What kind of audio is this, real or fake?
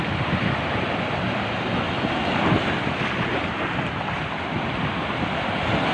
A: real